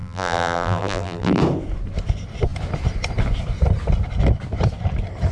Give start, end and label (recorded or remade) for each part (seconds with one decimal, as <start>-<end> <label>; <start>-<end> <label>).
0.0-1.4 remade; 1.4-5.3 recorded